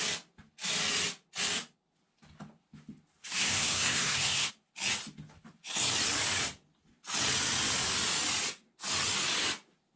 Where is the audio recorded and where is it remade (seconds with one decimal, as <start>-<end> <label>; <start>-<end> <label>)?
0.0-3.2 recorded; 3.2-4.5 remade; 4.5-10.0 recorded